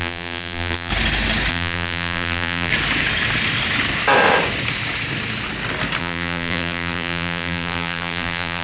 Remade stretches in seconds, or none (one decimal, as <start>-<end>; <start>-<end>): 0.0-0.9; 1.5-2.7; 6.0-8.6